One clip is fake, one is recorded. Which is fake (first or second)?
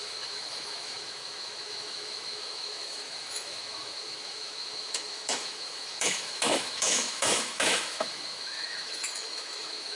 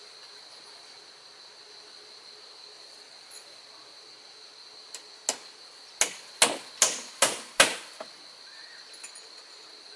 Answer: first